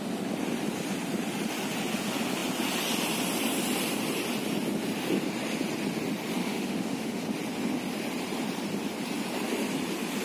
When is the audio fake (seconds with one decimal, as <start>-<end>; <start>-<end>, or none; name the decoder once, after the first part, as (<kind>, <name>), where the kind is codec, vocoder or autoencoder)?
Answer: 6.4-7.2 (autoencoder, DAC-VAE)